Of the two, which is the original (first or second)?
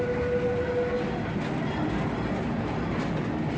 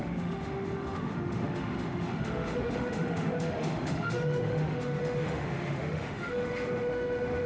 first